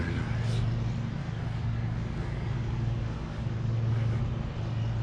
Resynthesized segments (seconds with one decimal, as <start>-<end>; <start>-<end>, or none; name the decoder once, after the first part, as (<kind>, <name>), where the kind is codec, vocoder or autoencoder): 1.2-4.2 (codec, DAC)